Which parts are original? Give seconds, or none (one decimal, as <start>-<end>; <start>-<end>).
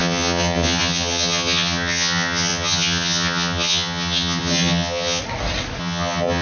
5.2-5.8